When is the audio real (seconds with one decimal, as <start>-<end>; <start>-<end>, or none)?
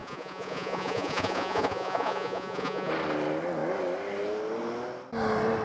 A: 2.9-5.6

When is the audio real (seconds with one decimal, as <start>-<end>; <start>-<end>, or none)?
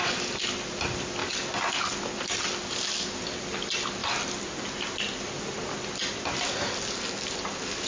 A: 0.0-7.9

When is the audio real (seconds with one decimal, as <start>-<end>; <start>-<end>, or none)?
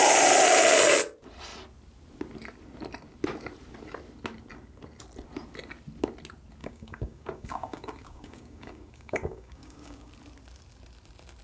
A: 0.0-6.6; 10.1-11.4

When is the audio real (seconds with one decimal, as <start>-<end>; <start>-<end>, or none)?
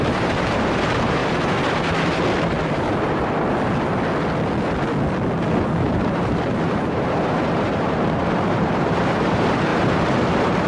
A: 1.2-5.6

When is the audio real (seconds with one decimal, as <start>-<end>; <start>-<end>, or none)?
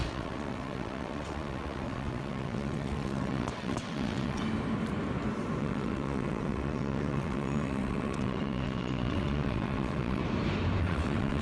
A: 4.4-5.6; 10.2-10.8